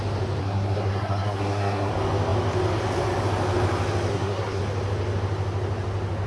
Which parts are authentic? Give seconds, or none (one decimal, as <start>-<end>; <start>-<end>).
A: 0.0-0.4; 1.9-4.1; 4.6-6.3